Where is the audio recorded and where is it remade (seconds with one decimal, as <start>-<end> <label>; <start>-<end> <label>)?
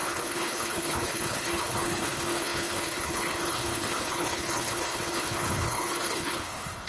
0.0-6.9 remade